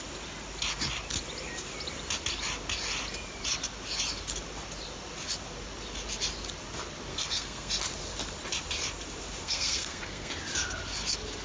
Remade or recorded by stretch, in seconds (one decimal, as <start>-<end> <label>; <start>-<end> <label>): 0.0-7.1 recorded; 7.1-7.7 remade; 7.7-9.4 recorded; 9.4-10.3 remade; 10.3-11.4 recorded